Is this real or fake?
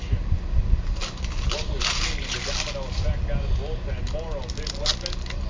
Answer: real